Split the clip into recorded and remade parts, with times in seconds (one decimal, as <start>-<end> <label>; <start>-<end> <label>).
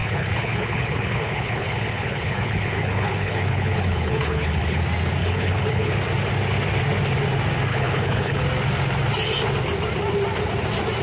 0.0-4.8 remade; 4.8-5.2 recorded; 5.2-5.9 remade; 5.9-7.7 recorded; 7.7-8.4 remade; 8.4-11.0 recorded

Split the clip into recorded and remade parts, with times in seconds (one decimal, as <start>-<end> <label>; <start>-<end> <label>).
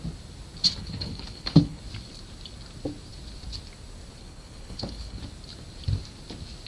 0.0-0.8 recorded; 0.8-1.8 remade; 1.8-4.2 recorded; 4.2-5.2 remade; 5.2-6.7 recorded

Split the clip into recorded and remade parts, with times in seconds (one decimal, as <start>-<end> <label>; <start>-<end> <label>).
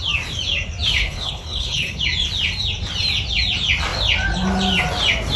0.0-1.0 recorded; 1.0-2.0 remade; 2.0-5.4 recorded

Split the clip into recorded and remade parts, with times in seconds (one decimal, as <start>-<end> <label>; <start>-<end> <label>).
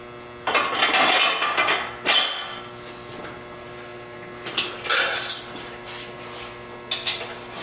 0.0-7.6 recorded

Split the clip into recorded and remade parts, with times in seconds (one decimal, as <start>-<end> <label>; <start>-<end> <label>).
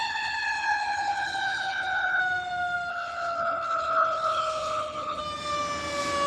0.0-2.2 remade; 2.2-2.9 recorded; 2.9-5.2 remade; 5.2-6.3 recorded